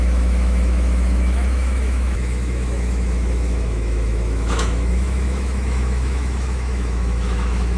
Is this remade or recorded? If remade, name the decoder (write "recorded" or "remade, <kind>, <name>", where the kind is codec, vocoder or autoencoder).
remade, autoencoder, DAC-VAE